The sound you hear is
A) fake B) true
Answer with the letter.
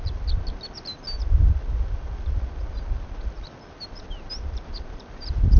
B